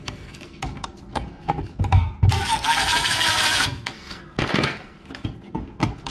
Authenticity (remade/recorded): remade